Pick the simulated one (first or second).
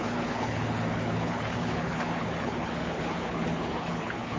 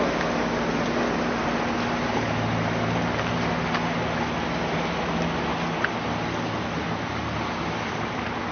first